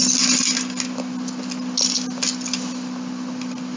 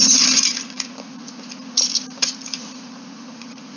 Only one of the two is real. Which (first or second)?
first